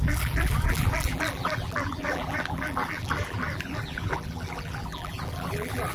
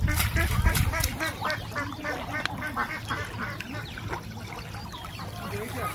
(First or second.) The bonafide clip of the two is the second